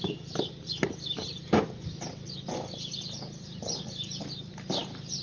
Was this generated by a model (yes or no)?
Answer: no